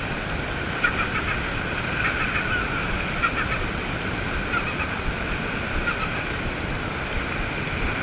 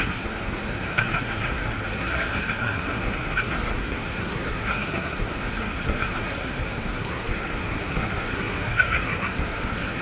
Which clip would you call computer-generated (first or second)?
second